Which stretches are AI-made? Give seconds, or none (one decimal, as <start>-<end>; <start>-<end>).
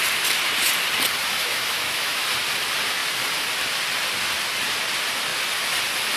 1.2-2.3